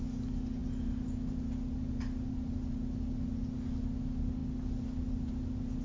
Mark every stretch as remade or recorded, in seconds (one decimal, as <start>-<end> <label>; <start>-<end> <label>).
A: 0.0-5.8 recorded